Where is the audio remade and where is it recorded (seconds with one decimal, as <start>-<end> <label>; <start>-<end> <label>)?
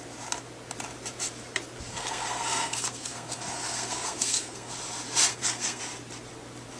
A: 0.0-1.9 recorded; 1.9-4.7 remade; 4.7-5.3 recorded; 5.3-5.8 remade; 5.8-6.8 recorded